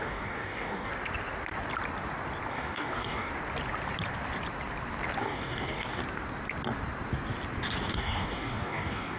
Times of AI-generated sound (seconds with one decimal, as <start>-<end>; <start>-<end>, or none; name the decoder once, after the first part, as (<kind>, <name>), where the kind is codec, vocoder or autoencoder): 0.0-0.9 (codec, DAC); 2.5-3.3; 5.2-6.0; 7.9-9.2